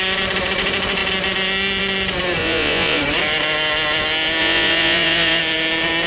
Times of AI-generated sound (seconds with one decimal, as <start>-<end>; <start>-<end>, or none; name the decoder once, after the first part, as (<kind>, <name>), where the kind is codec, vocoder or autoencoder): 2.4-3.0 (vocoder, Vocos); 4.4-5.4